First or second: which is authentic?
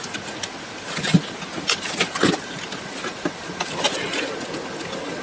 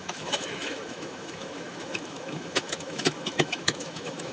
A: first